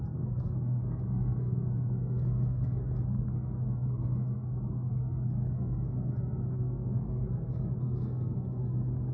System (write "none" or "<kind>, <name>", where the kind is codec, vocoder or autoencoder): codec, SNAC